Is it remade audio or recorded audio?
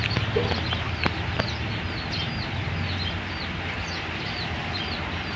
recorded